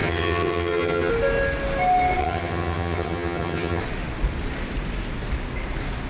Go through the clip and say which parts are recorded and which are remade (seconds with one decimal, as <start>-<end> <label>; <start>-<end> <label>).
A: 0.0-1.1 remade; 1.1-2.2 recorded; 2.2-3.8 remade; 3.8-6.1 recorded